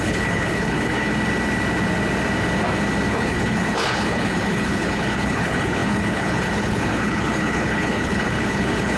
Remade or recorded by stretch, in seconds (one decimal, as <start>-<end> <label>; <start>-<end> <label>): 0.0-1.1 remade; 1.1-3.1 recorded; 3.1-9.0 remade